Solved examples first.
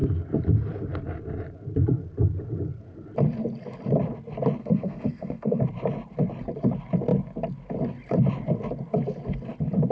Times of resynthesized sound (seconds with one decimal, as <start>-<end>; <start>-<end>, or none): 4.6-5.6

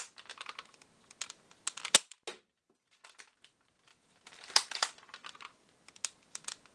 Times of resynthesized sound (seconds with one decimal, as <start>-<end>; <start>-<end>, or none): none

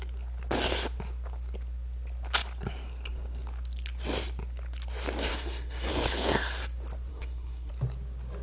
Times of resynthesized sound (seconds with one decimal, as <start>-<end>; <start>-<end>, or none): 5.3-5.9; 7.1-7.7